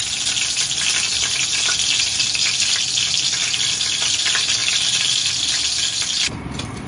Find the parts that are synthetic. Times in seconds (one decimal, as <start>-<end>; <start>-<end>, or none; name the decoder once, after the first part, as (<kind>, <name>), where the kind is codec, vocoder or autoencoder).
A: 4.6-5.3 (vocoder, BigVGAN v2)

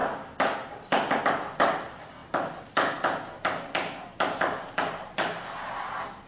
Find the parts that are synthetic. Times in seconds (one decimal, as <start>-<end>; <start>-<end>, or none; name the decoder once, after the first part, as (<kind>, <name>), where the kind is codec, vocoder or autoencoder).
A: none

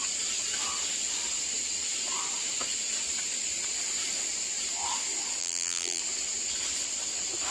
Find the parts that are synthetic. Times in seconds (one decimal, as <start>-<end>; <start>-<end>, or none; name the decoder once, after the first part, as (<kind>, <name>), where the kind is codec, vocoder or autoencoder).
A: 5.4-6.0 (vocoder, BigVGAN v2)

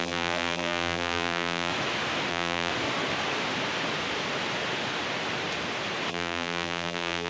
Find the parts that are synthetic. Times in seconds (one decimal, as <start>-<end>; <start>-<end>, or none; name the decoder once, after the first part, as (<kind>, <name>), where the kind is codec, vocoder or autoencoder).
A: 0.0-1.7 (vocoder, BigVGAN v2); 2.3-2.7; 6.1-7.3

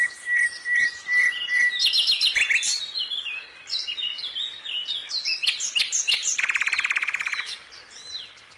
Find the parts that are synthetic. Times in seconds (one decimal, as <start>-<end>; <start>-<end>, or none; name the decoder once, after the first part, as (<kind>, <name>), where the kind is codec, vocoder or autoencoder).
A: none

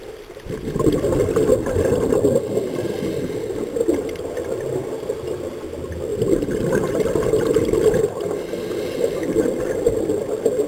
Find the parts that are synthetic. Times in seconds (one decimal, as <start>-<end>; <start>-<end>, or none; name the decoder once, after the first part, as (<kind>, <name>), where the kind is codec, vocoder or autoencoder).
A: 6.1-8.0 (vocoder, BigVGAN v2)

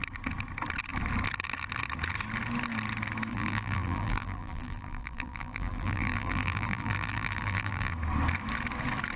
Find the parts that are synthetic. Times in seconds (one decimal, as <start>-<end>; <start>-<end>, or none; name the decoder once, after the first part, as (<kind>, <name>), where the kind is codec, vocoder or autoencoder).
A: 3.3-7.9 (vocoder, BigVGAN v2)